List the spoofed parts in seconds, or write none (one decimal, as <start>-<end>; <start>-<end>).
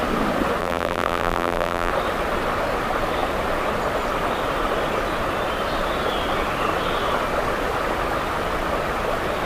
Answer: 0.6-1.9